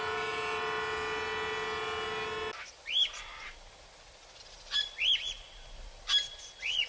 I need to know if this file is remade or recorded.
recorded